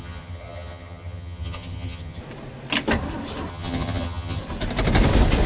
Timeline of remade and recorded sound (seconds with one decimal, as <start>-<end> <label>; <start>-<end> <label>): 0.0-2.2 remade; 2.2-3.5 recorded; 3.5-4.4 remade; 4.4-5.5 recorded